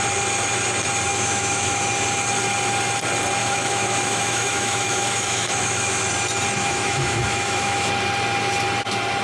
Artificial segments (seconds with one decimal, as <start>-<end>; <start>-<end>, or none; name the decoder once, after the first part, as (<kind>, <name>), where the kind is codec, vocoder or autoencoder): 1.1-1.8 (autoencoder, DAC-VAE); 3.4-6.0; 6.6-7.9